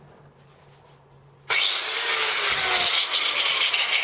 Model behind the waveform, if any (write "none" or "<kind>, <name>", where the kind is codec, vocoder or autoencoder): none